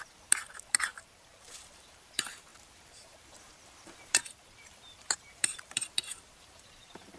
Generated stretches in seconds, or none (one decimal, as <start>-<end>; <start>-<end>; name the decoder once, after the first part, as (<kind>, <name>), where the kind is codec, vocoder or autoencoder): 0.0-7.2 (vocoder, BigVGAN v2)